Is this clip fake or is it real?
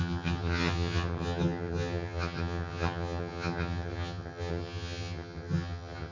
fake